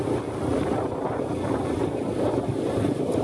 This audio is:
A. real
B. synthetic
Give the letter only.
A